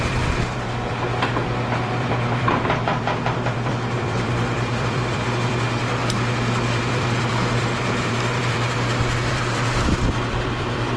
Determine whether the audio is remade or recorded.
remade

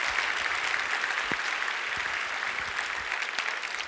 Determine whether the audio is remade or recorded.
recorded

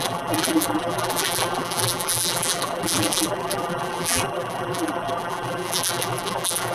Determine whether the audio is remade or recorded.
remade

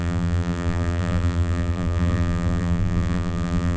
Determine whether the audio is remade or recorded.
remade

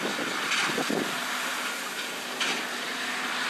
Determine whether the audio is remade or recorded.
recorded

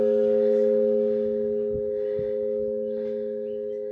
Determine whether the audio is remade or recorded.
recorded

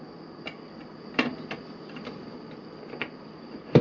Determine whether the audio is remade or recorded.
remade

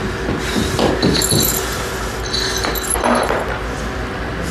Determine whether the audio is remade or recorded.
recorded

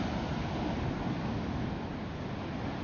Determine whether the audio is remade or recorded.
recorded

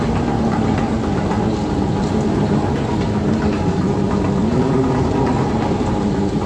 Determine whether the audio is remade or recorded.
recorded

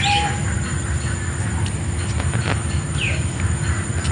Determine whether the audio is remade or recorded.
recorded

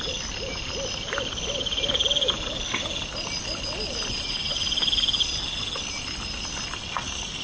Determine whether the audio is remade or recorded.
recorded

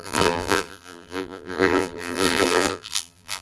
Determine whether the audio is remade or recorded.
remade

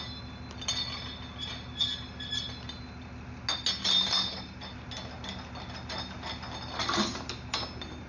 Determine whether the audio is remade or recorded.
recorded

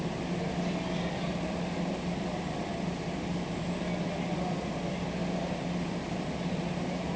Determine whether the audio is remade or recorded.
recorded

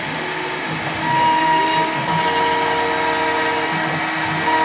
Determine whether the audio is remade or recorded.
recorded